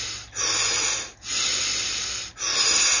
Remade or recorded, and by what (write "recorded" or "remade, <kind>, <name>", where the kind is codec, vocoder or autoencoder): recorded